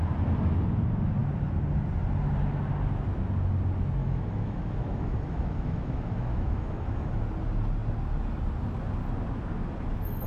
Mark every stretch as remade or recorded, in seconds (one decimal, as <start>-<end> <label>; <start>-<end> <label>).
0.0-4.0 recorded; 4.0-7.2 remade; 7.2-10.3 recorded